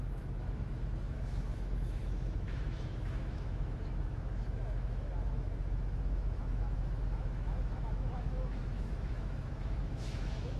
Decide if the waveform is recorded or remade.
remade